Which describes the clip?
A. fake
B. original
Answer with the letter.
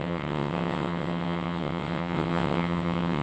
A